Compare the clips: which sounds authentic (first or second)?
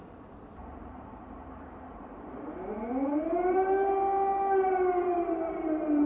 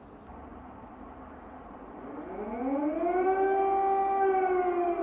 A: second